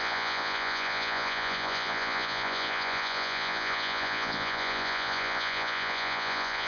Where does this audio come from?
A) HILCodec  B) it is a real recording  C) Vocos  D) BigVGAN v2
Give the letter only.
C